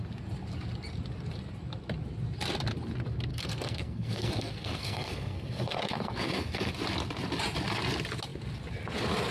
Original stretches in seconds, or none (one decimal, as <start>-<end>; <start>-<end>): 0.0-3.3; 6.7-9.3